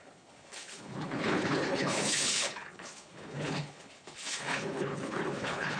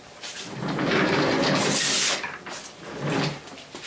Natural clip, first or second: second